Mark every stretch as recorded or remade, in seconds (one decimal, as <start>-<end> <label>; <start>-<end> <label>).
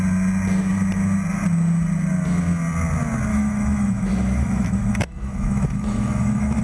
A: 0.0-3.3 recorded; 3.3-6.6 remade